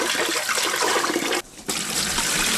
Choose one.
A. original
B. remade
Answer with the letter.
A